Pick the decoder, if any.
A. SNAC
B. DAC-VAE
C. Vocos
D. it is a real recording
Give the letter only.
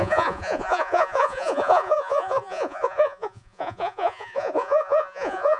C